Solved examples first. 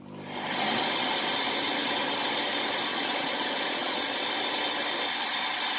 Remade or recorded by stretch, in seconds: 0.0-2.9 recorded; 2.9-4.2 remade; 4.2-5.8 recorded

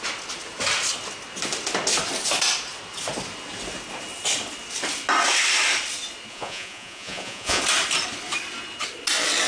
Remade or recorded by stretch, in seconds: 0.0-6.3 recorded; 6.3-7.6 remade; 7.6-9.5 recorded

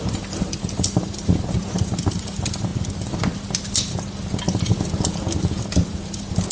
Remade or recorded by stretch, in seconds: 0.0-2.7 remade; 2.7-5.4 recorded; 5.4-6.5 remade